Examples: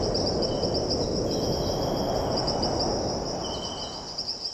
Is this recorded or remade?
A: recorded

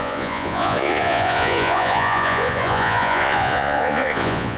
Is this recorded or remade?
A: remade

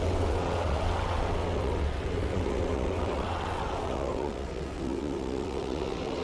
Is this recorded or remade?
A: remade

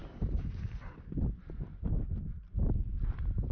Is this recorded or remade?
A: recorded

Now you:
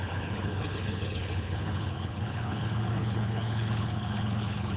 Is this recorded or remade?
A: remade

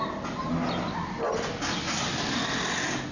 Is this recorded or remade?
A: recorded